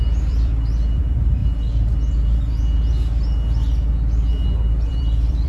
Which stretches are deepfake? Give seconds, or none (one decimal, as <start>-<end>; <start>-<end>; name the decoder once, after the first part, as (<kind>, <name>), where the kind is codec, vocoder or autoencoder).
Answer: 0.0-1.4 (vocoder, BigVGAN v2); 4.7-5.5